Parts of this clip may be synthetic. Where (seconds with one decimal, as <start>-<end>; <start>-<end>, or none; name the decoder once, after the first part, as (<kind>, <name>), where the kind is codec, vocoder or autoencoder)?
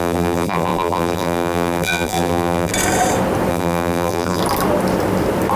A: 0.0-2.7 (vocoder, BigVGAN v2); 3.5-4.4